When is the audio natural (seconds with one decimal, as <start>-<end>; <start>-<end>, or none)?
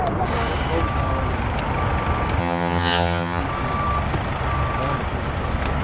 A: 0.0-2.4; 3.4-5.8